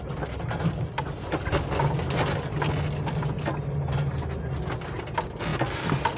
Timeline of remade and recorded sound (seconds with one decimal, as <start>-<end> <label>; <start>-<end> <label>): 0.0-6.2 recorded